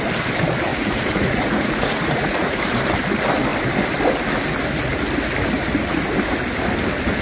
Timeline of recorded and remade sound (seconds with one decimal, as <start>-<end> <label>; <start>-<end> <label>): 0.0-0.7 recorded; 0.7-2.6 remade; 2.6-7.2 recorded

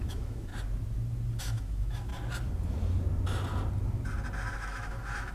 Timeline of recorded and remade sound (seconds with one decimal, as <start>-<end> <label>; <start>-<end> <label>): 0.0-0.5 remade; 0.5-1.4 recorded; 1.4-2.1 remade; 2.1-4.5 recorded; 4.5-5.3 remade